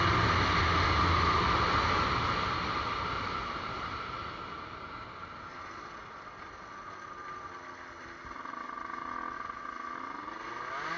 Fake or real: real